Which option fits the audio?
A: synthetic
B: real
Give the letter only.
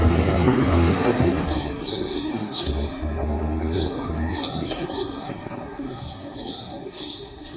A